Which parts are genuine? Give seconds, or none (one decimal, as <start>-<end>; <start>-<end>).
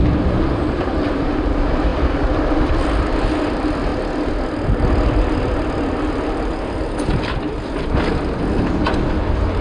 3.9-5.1; 5.5-8.1